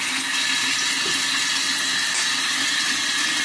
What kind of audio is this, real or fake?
real